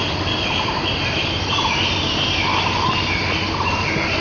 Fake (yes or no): no